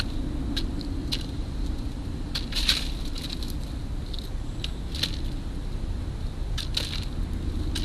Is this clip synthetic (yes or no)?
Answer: no